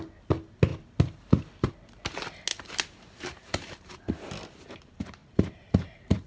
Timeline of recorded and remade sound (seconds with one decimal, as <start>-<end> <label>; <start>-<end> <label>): 0.0-2.5 recorded; 2.5-3.9 remade; 3.9-5.2 recorded; 5.2-6.3 remade

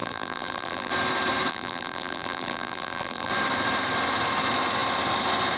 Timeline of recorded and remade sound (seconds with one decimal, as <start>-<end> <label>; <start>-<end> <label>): 0.0-0.9 remade; 0.9-1.5 recorded; 1.5-3.3 remade; 3.3-5.6 recorded

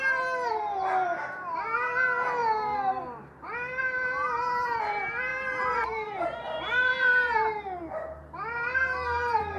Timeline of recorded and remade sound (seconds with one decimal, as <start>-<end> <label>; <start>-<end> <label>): 0.0-5.3 recorded; 5.3-9.6 remade

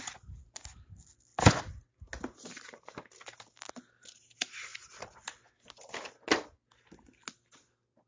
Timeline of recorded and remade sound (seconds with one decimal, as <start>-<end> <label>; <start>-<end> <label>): 0.0-8.1 recorded

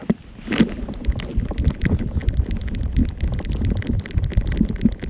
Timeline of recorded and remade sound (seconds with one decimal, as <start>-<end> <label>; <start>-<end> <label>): 0.0-1.3 recorded; 1.3-2.0 remade; 2.0-3.0 recorded; 3.0-3.5 remade; 3.5-5.1 recorded

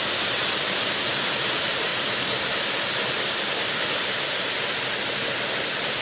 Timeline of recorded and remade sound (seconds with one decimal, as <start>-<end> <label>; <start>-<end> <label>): 0.0-1.9 remade; 1.9-5.4 recorded; 5.4-6.0 remade

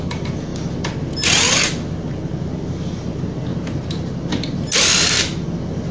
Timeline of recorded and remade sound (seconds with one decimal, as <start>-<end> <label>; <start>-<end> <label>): 0.0-3.5 recorded; 3.5-4.1 remade; 4.1-5.9 recorded